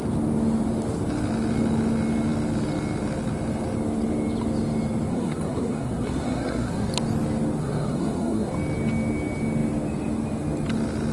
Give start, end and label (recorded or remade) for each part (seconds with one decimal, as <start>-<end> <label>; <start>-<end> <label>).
0.0-5.1 recorded; 5.1-6.9 remade; 6.9-7.6 recorded; 7.6-8.5 remade; 8.5-11.1 recorded